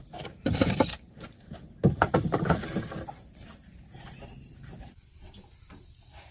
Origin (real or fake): fake